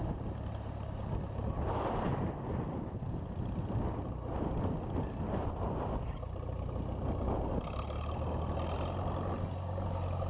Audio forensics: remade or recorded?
recorded